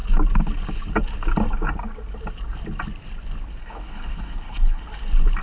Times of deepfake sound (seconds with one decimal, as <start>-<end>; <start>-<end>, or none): 3.6-4.9